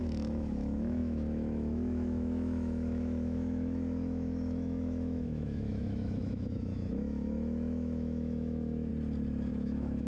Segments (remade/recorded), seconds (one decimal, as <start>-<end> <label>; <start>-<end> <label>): 0.0-8.9 remade; 8.9-9.5 recorded; 9.5-10.1 remade